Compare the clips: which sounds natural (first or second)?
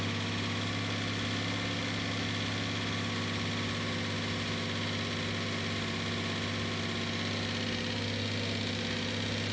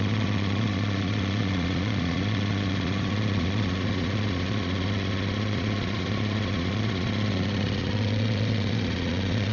first